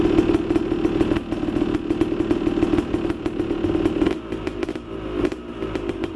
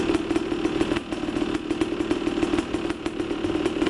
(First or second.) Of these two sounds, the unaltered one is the first